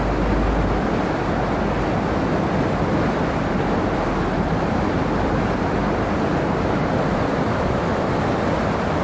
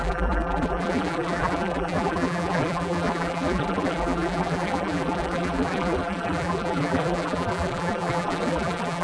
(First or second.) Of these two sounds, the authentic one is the first